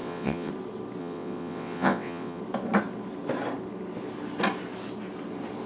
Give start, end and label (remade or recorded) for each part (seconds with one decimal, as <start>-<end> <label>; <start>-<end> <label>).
0.0-0.5 remade; 0.5-1.0 recorded; 1.0-2.4 remade; 2.4-5.7 recorded